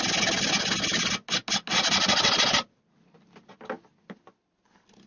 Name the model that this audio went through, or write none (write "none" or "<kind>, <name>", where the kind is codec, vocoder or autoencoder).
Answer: none